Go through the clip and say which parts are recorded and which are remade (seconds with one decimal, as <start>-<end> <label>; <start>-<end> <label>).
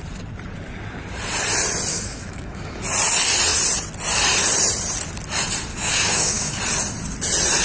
0.0-1.9 recorded; 1.9-2.8 remade; 2.8-5.7 recorded; 5.7-6.6 remade; 6.6-7.6 recorded